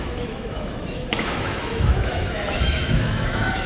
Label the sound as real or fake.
fake